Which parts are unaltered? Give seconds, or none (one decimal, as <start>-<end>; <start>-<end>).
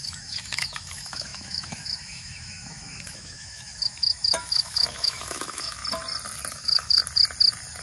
5.8-6.5; 7.0-7.8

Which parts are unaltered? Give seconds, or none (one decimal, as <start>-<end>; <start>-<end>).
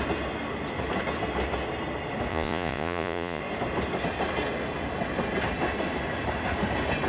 0.0-2.3; 3.4-7.1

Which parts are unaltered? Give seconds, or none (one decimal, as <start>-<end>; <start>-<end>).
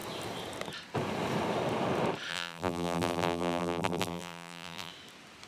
0.0-2.3; 4.9-5.5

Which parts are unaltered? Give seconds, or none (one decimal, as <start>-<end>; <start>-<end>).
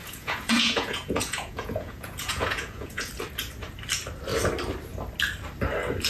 3.1-6.1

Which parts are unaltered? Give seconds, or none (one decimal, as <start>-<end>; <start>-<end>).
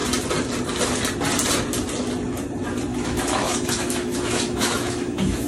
0.0-2.9